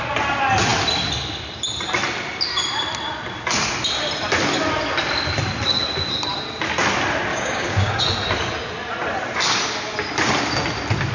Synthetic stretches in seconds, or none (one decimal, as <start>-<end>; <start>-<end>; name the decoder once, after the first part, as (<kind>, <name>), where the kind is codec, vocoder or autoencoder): 7.3-8.0 (codec, DAC)